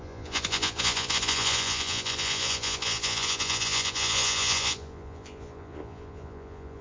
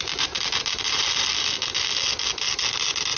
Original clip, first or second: second